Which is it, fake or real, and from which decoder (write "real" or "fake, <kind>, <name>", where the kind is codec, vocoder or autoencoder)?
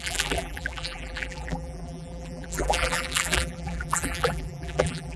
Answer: fake, vocoder, BigVGAN v2